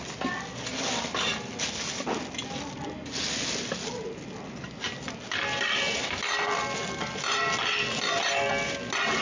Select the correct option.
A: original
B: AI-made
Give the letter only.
A